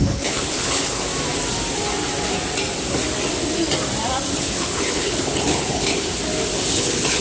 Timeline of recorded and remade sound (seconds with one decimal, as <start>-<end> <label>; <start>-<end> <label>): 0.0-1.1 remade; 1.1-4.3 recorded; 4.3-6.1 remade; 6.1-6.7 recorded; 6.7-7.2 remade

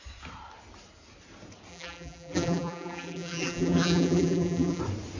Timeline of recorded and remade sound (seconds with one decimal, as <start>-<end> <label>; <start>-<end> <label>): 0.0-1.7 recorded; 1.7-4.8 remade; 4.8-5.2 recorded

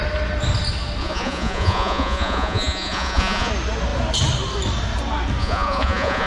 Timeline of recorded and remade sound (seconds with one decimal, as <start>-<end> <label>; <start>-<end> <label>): 0.0-1.0 recorded; 1.0-3.5 remade; 3.5-5.4 recorded; 5.4-6.3 remade